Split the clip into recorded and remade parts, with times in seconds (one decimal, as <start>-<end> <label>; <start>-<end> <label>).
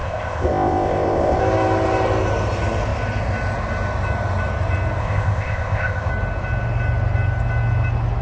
0.0-1.4 remade; 1.4-5.0 recorded; 5.0-6.1 remade; 6.1-8.2 recorded